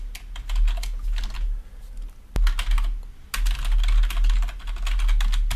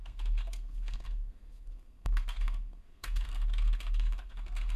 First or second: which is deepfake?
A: second